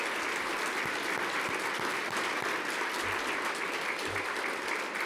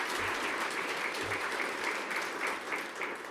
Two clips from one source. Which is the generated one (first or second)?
second